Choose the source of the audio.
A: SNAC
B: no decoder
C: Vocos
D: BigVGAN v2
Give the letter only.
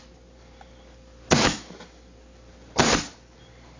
B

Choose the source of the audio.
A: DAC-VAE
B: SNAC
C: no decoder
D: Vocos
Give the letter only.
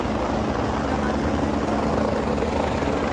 C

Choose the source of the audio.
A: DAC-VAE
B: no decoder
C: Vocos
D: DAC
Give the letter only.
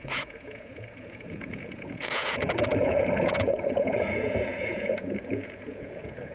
C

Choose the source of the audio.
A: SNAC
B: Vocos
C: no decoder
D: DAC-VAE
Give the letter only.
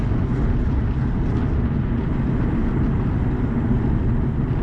C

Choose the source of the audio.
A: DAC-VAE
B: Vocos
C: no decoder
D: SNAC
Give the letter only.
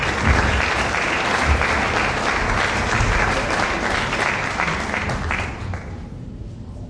C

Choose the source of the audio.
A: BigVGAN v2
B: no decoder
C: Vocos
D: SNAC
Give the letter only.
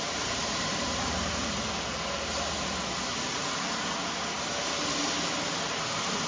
B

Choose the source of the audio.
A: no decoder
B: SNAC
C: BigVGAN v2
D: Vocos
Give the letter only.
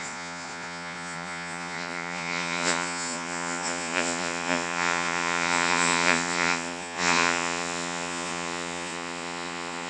D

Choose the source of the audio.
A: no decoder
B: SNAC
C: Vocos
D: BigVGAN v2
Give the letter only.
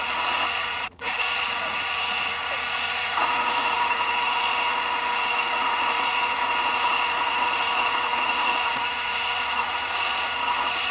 C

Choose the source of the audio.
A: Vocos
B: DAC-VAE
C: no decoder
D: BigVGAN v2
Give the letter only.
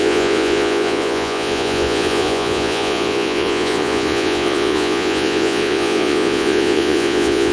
A